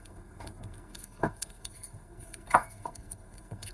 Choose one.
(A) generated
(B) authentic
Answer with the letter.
A